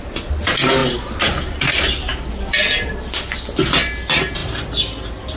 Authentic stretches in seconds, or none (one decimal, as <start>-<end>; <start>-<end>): 0.0-5.4